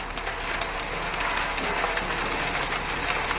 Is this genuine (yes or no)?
yes